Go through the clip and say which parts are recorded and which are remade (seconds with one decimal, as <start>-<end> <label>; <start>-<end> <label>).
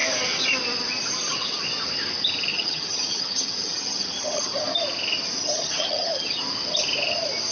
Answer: 0.0-2.5 recorded; 2.5-4.6 remade; 4.6-5.4 recorded; 5.4-6.4 remade; 6.4-7.5 recorded